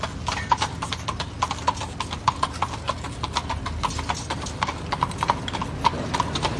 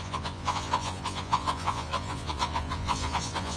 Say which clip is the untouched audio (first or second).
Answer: first